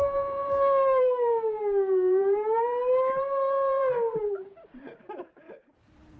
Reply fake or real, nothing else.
fake